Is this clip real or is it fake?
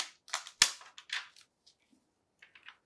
real